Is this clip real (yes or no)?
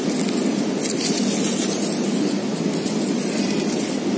yes